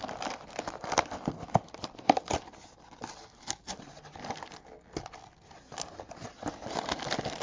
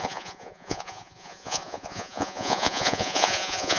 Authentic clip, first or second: first